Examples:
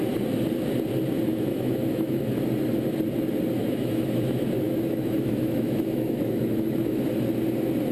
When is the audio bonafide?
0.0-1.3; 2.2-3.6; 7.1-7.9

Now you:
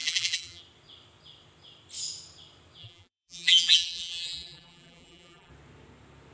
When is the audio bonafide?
0.6-2.8; 5.5-6.3

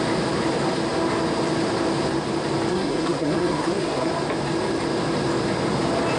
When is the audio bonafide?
0.0-2.7; 4.1-6.2

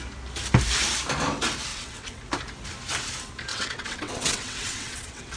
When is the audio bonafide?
0.0-1.7; 2.2-3.5